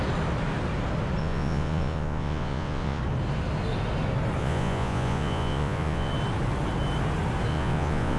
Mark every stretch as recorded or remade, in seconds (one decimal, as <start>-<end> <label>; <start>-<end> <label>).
0.0-1.2 recorded; 1.2-3.0 remade; 3.0-4.4 recorded; 4.4-6.1 remade; 6.1-7.5 recorded; 7.5-8.2 remade